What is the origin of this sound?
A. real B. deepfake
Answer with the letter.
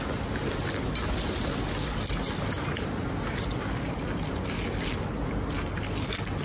A